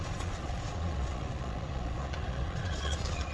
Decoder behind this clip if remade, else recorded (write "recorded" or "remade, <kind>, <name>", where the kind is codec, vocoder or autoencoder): remade, vocoder, Vocos